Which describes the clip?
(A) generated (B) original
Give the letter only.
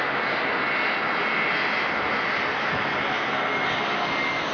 B